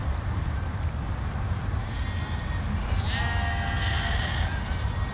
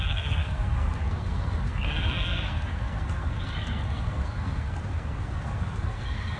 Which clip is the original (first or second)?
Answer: first